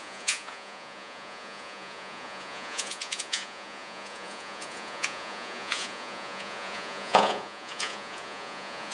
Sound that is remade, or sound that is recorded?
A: remade